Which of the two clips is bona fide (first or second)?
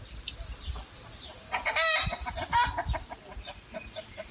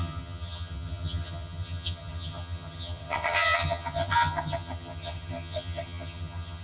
first